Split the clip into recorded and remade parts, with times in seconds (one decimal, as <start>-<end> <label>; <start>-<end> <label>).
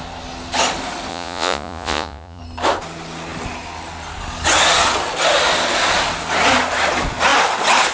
0.0-1.1 recorded; 1.1-2.4 remade; 2.4-7.9 recorded